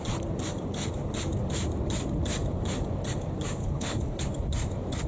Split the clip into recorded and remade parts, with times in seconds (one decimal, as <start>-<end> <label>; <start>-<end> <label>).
0.0-3.6 recorded; 3.6-4.2 remade; 4.2-5.1 recorded